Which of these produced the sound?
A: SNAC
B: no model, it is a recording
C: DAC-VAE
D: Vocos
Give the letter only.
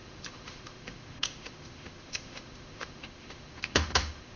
C